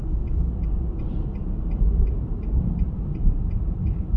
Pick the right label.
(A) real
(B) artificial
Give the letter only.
B